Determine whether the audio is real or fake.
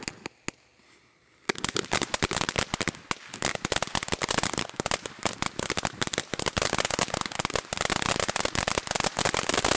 real